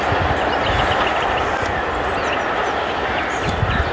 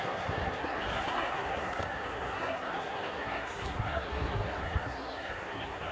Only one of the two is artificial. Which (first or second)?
second